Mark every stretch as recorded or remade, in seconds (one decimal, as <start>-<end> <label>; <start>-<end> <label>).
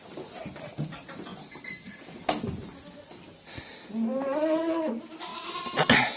0.0-1.3 remade; 1.3-3.2 recorded; 3.2-5.3 remade; 5.3-6.2 recorded